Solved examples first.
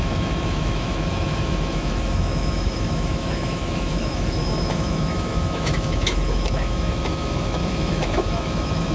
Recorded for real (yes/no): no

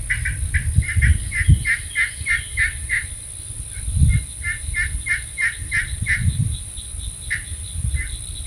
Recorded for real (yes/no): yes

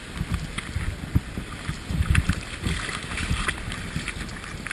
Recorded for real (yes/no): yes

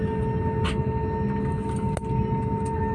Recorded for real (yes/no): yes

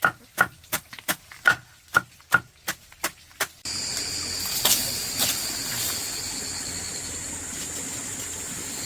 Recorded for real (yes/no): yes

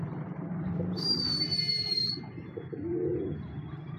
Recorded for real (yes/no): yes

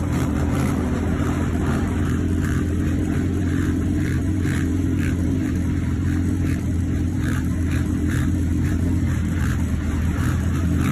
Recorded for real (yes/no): no